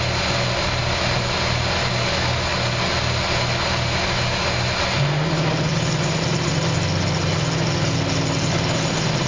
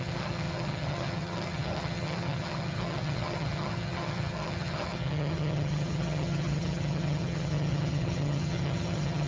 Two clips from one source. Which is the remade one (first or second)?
second